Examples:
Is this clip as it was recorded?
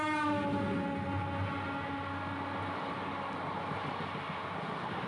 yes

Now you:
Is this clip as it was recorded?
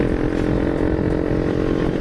no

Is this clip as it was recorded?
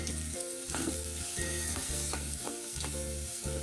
no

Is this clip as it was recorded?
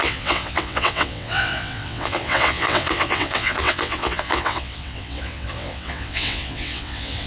no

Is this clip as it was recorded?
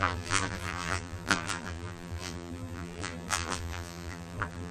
no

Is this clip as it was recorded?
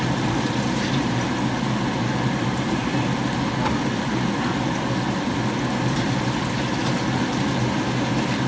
yes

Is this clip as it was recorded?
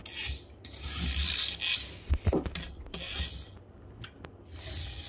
yes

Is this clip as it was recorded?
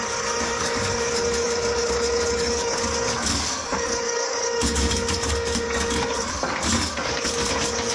no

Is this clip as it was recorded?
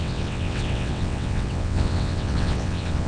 no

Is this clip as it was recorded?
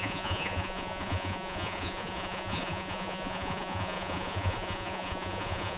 no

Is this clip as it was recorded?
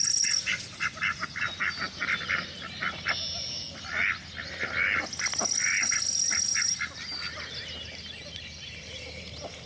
yes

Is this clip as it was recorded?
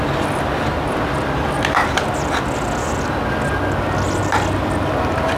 yes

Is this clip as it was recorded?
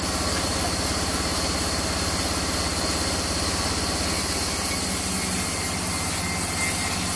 yes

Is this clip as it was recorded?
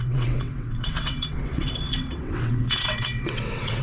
no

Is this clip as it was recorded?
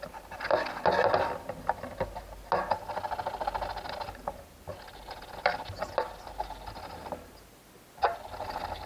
yes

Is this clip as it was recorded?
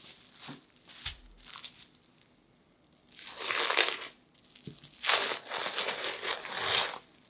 yes